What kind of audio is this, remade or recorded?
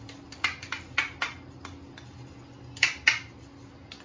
recorded